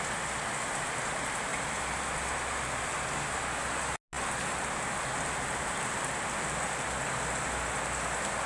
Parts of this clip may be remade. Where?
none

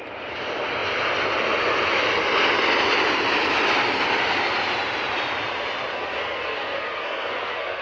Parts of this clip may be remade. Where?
5.9-7.8

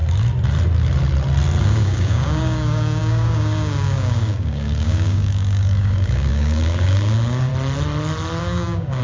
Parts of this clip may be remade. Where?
1.6-7.5; 8.4-9.0

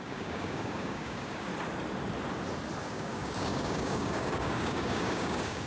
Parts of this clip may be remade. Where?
0.0-1.5; 2.8-5.7

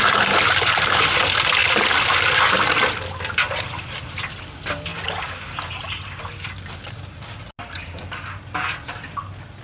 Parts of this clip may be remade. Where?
none